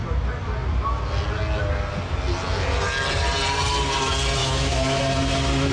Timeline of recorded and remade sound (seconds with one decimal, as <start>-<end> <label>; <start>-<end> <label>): 0.0-4.4 recorded; 4.4-5.0 remade; 5.0-5.7 recorded